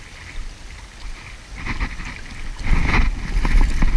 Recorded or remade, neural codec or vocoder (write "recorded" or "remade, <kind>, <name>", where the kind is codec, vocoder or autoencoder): recorded